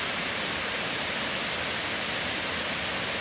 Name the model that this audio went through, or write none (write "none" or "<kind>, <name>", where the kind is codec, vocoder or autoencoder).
none